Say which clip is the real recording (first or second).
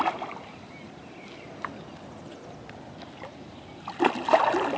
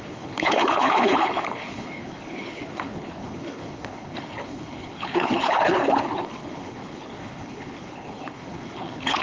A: first